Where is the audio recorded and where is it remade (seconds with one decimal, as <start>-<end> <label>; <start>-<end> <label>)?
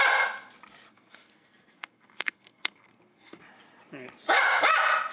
0.0-0.9 recorded; 0.9-3.4 remade; 3.4-5.1 recorded